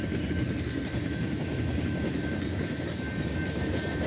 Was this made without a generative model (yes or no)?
yes